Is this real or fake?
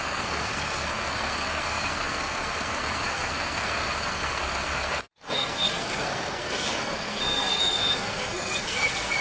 fake